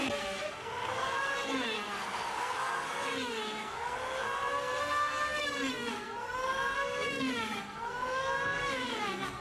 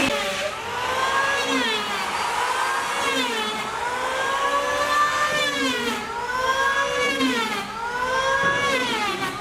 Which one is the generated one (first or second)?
first